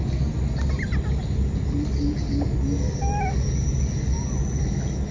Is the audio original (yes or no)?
yes